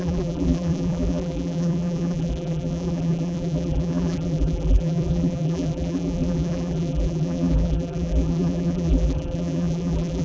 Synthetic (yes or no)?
yes